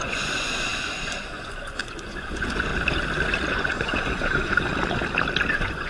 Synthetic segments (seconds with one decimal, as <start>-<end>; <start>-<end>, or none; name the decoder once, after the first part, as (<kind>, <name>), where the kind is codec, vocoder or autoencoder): 0.0-2.7 (vocoder, Vocos); 3.5-4.7; 5.5-5.9